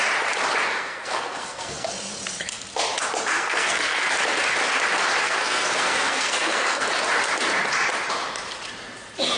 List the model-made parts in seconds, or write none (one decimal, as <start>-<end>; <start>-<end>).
0.7-1.9; 3.3-4.1; 5.2-6.9